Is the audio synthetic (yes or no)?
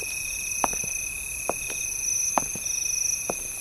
no